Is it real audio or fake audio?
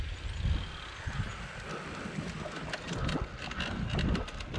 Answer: real